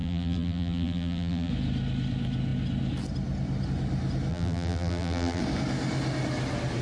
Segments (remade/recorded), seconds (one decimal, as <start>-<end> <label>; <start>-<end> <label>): 0.0-1.5 remade; 1.5-4.3 recorded; 4.3-5.4 remade; 5.4-6.8 recorded